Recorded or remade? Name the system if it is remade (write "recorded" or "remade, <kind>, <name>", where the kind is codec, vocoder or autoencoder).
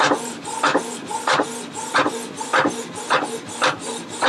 recorded